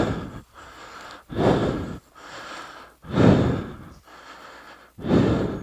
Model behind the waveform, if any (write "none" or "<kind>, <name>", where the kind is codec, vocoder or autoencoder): none